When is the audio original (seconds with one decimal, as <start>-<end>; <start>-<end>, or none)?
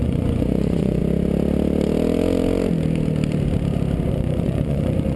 1.0-4.1